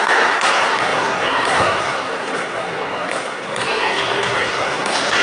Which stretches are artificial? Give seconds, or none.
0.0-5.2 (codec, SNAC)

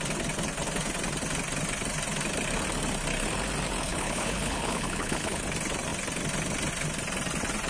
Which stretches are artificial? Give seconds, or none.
3.9-5.4 (codec, HILCodec)

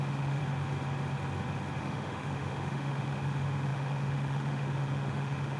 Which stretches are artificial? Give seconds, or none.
0.0-0.4 (autoencoder, DAC-VAE); 1.8-5.6

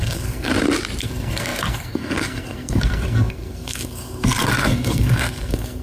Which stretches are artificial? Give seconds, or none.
0.0-0.5 (codec, SNAC); 1.0-5.8

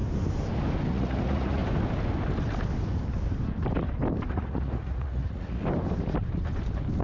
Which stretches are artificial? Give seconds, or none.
0.9-1.6 (vocoder, Vocos); 4.3-5.6

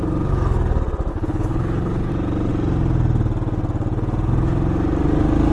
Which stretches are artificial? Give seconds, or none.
1.1-2.1 (codec, HILCodec)

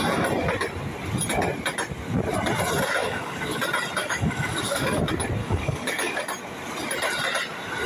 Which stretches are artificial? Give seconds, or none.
3.0-3.6 (codec, DAC); 4.0-5.0; 5.4-6.2